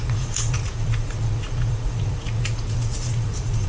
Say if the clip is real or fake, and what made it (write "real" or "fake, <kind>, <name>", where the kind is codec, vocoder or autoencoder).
fake, vocoder, Vocos